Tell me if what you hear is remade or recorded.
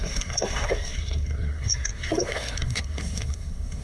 remade